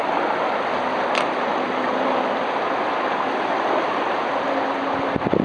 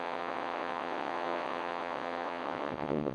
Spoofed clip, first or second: second